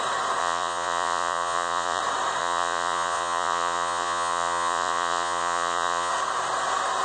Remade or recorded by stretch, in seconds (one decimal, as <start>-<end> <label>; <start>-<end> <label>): 0.0-0.4 recorded; 0.4-2.0 remade; 2.0-2.4 recorded; 2.4-6.1 remade; 6.1-7.0 recorded